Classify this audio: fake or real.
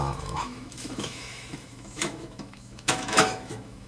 fake